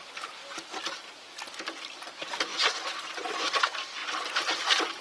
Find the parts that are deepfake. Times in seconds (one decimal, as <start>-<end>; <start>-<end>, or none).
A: 0.0-0.4; 2.1-2.5; 3.6-5.0